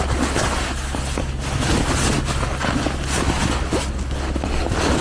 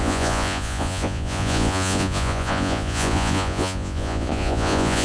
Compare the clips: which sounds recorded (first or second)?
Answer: first